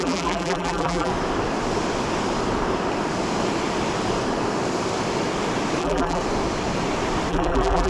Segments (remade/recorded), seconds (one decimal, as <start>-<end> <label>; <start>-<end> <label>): 0.0-1.1 remade; 1.1-5.8 recorded; 5.8-6.2 remade; 6.2-7.3 recorded; 7.3-7.9 remade